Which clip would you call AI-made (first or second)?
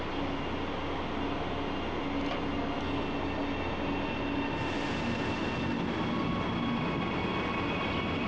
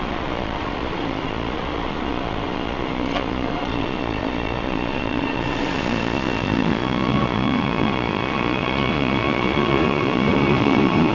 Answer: second